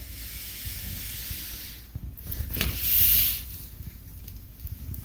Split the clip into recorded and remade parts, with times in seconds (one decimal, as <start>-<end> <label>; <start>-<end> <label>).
0.0-1.2 remade; 1.2-4.2 recorded; 4.2-5.0 remade